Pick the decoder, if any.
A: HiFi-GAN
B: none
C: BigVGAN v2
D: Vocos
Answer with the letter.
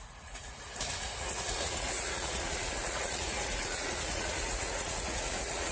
D